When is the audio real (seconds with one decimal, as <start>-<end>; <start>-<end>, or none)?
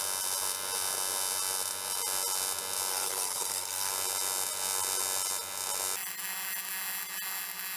0.0-2.9; 3.9-7.8